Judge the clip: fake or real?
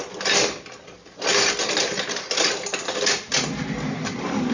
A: real